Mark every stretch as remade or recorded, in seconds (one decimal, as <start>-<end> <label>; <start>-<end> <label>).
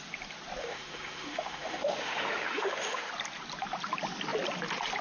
0.0-0.6 recorded; 0.6-3.1 remade; 3.1-5.0 recorded